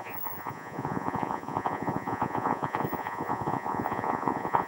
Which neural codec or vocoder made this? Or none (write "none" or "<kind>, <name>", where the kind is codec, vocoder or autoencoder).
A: vocoder, Vocos